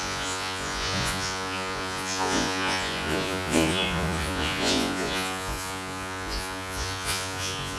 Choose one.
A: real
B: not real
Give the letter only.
B